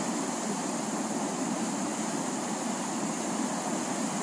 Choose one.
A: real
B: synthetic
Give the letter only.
A